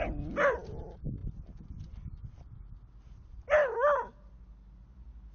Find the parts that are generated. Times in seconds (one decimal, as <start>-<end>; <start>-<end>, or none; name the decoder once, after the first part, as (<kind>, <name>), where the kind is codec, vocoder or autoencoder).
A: none